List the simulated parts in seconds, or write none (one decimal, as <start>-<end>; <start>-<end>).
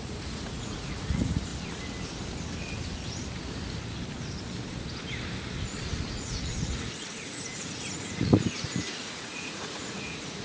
0.0-1.5; 6.1-10.4